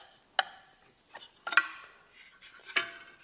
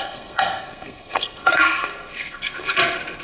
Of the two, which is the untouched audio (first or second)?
first